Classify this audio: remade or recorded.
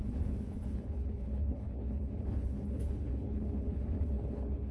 remade